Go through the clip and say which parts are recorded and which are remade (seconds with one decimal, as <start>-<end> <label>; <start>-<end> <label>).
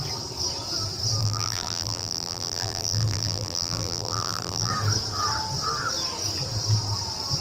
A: 0.0-1.2 recorded; 1.2-4.7 remade; 4.7-7.4 recorded